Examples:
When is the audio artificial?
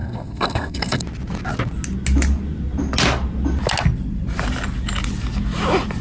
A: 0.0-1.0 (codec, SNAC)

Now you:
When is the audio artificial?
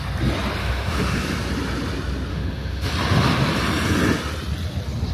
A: 0.6-1.2 (autoencoder, DAC-VAE); 2.3-2.9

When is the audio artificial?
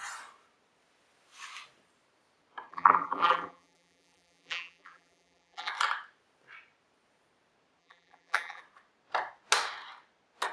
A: 2.7-5.7 (vocoder, BigVGAN v2); 7.8-8.6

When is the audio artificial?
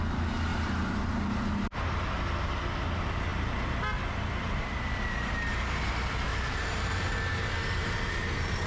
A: 0.5-1.9 (vocoder, BigVGAN v2); 6.3-8.7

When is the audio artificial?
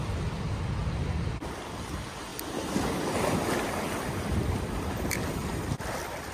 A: 0.8-1.3 (vocoder, BigVGAN v2)